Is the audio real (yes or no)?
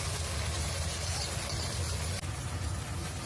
yes